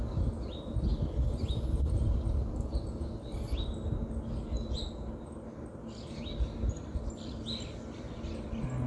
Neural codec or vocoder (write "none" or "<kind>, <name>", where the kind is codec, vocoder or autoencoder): none